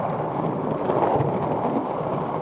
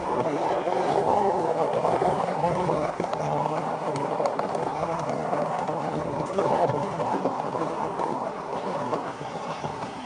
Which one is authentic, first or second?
first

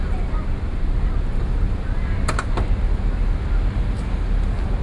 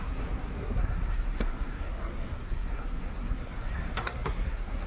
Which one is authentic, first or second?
first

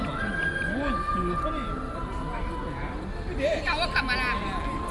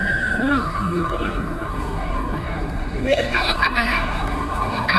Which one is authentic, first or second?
first